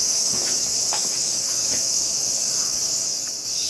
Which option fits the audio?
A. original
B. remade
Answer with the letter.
B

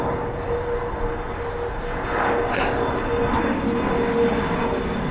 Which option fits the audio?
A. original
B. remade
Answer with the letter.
A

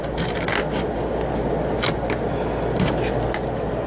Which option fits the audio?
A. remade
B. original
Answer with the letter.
B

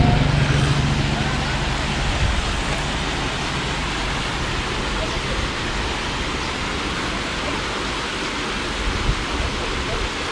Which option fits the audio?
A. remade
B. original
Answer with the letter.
B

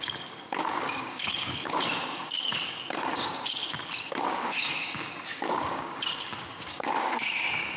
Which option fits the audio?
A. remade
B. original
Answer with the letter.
A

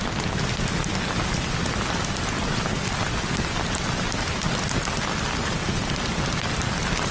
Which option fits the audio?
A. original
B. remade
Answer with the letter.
A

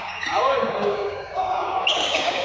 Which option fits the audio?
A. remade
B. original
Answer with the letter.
A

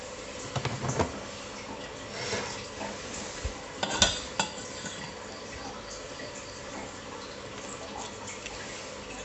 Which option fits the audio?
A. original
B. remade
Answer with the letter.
A